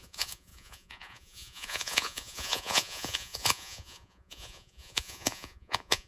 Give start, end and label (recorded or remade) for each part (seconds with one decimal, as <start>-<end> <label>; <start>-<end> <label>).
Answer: 0.0-6.1 remade